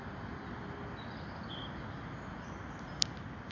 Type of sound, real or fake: real